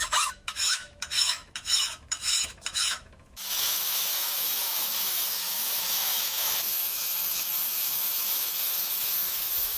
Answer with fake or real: fake